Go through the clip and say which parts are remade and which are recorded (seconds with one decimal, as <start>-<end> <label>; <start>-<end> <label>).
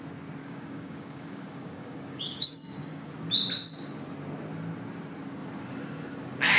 0.0-0.4 recorded; 0.4-3.1 remade; 3.1-6.6 recorded